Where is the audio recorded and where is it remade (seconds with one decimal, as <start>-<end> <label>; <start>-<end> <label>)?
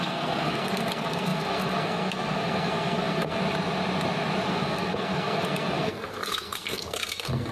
0.0-3.4 remade; 3.4-4.5 recorded; 4.5-7.5 remade